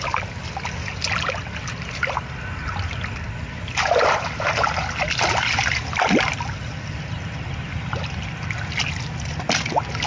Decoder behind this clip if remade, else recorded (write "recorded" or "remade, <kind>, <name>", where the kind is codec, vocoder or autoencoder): recorded